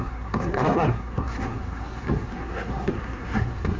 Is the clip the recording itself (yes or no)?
no